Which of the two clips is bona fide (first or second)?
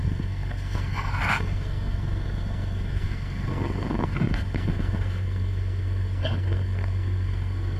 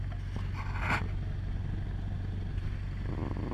second